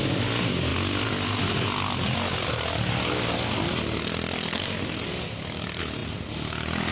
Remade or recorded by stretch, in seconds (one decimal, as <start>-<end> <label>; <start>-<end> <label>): 0.0-6.9 recorded